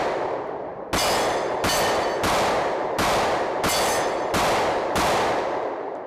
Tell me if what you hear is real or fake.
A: real